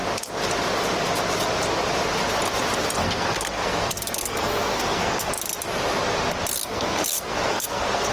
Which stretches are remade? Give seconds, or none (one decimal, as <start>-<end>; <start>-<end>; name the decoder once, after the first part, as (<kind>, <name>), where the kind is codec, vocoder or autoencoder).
3.0-5.3 (codec, SNAC); 6.6-8.1